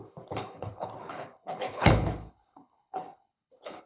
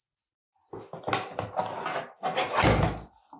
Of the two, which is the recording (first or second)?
second